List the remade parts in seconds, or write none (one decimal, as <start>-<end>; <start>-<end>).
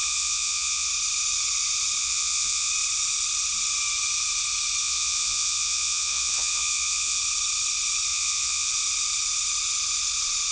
0.0-0.9; 2.0-2.7; 4.8-7.2; 8.1-8.7